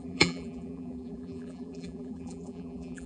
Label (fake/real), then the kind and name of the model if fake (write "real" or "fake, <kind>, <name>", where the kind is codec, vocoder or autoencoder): fake, vocoder, BigVGAN v2